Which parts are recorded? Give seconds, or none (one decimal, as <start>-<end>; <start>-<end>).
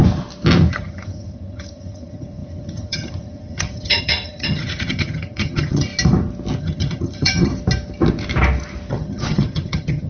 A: 0.0-0.7; 5.9-6.6; 7.5-8.9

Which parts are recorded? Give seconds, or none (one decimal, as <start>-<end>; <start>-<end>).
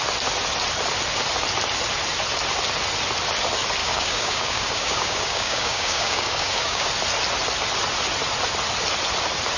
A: 0.0-3.8; 6.9-9.6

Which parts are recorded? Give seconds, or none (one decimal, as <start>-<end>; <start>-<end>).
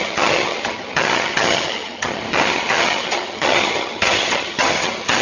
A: none